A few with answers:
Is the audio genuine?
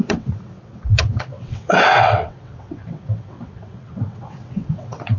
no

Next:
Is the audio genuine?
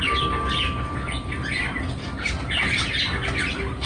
yes